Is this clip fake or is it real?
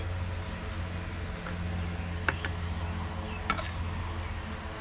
real